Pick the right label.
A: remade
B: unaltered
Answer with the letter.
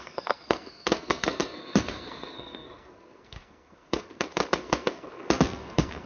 A